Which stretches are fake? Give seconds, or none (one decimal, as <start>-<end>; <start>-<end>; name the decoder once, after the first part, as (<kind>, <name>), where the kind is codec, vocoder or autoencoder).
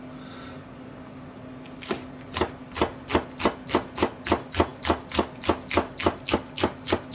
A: none